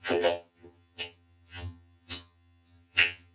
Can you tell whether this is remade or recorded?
remade